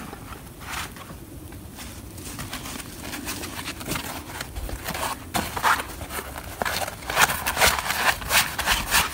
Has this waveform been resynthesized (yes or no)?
no